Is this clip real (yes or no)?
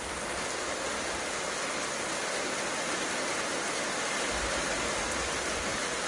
yes